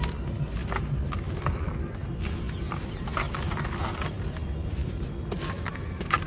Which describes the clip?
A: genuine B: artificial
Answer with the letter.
A